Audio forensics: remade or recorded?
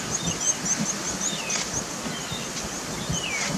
recorded